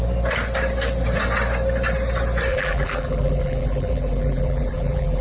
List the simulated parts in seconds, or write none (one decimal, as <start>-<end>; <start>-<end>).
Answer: 2.5-5.2